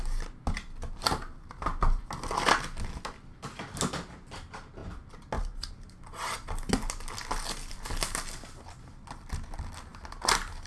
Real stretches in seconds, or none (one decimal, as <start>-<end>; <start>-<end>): 0.0-10.7